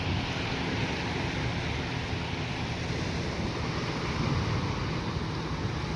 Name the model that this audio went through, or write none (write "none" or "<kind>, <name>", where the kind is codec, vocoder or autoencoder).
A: none